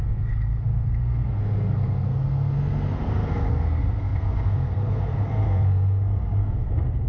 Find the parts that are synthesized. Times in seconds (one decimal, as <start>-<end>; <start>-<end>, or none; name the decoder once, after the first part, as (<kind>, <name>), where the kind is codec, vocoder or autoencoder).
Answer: 0.0-7.1 (codec, SNAC)